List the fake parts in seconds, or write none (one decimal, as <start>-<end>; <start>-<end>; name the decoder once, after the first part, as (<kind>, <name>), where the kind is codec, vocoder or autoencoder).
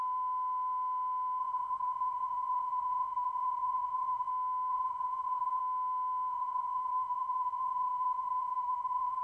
1.4-4.3 (vocoder, BigVGAN v2); 4.7-5.6; 6.3-9.2